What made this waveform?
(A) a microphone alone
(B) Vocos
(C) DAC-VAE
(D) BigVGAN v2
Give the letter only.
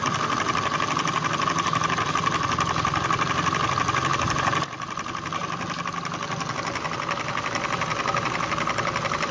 A